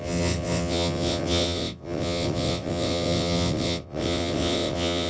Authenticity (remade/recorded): remade